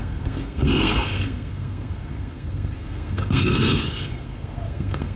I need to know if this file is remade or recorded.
remade